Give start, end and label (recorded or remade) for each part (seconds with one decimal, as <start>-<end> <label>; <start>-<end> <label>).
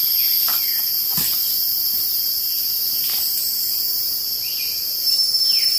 0.0-5.8 recorded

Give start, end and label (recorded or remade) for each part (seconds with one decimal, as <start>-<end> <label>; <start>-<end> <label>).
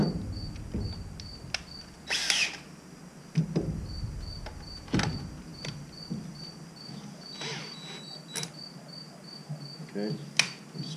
0.0-11.0 recorded